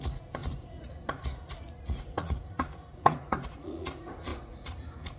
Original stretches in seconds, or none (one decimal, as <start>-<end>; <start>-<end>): none